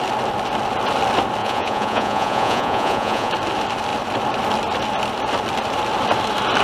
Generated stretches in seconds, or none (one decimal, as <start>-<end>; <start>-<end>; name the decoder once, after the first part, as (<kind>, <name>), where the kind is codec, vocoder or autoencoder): 1.4-3.3 (vocoder, Vocos)